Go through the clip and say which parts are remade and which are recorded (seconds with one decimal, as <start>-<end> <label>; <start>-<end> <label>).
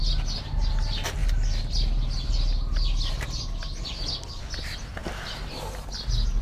0.0-6.4 recorded